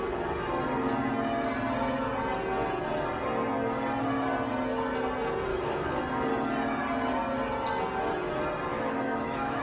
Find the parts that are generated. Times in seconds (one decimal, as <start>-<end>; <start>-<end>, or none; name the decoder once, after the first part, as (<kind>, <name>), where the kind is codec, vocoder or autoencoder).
5.5-6.0 (autoencoder, DAC-VAE); 8.7-9.6